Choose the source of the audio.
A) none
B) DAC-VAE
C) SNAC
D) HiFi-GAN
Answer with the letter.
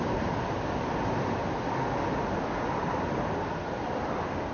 A